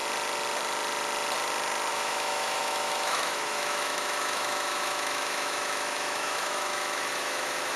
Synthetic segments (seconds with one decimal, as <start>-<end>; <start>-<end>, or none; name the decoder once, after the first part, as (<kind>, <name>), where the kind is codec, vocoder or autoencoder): 1.9-7.8 (autoencoder, DAC-VAE)